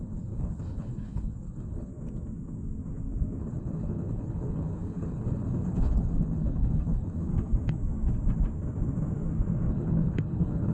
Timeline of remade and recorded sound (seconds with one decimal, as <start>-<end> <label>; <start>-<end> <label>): 0.0-1.9 remade; 1.9-3.4 recorded; 3.4-7.3 remade; 7.3-9.7 recorded; 9.7-10.7 remade